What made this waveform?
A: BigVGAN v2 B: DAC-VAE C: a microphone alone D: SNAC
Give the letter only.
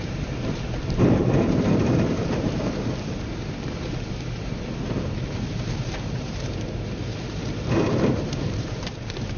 A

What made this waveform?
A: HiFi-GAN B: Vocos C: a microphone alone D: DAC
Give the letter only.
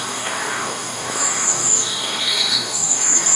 D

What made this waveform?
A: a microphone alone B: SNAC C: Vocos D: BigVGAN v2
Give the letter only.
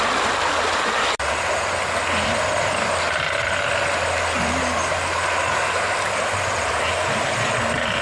A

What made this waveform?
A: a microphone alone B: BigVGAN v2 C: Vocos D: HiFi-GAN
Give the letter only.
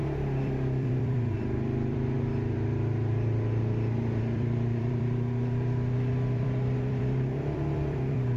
B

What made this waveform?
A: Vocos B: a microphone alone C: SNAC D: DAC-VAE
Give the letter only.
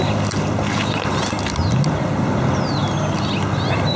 B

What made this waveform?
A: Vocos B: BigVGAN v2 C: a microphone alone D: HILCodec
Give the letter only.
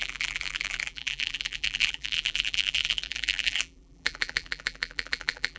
B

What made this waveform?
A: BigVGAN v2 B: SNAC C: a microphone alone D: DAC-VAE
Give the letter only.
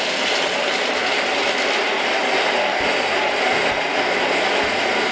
C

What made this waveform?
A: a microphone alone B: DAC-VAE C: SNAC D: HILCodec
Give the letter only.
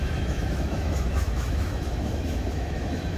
B